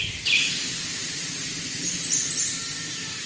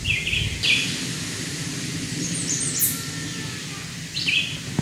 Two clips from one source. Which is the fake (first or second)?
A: first